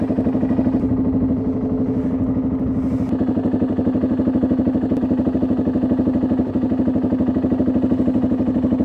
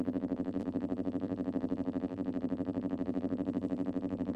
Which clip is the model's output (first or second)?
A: second